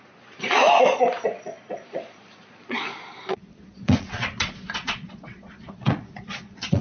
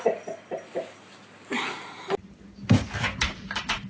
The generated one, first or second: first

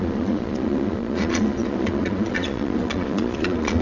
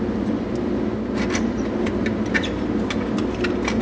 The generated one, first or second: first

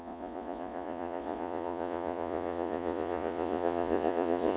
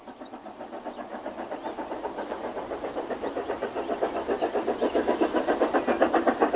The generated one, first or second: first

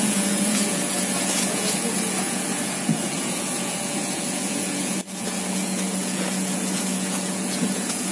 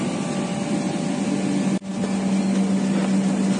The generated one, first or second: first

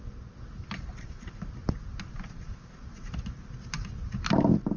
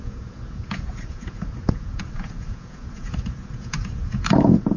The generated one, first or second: second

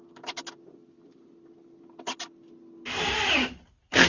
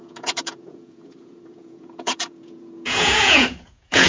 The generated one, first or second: second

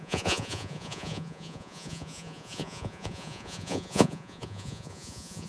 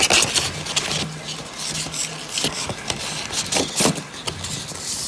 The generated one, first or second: first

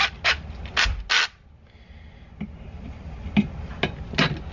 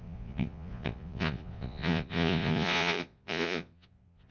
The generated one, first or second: second